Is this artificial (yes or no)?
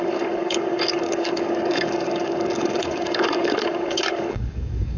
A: yes